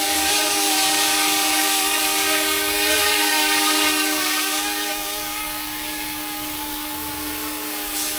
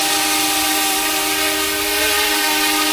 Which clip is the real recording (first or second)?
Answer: second